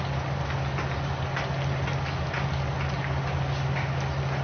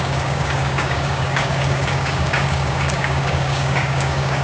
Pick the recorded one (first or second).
first